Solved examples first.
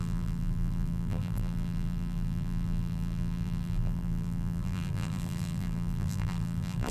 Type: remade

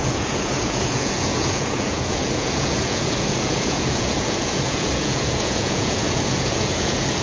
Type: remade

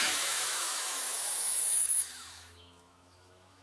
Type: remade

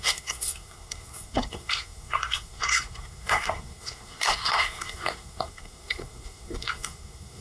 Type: remade